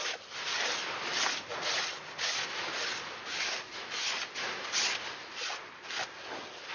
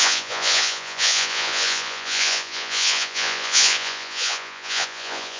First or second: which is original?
first